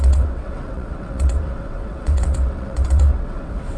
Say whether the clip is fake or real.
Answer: fake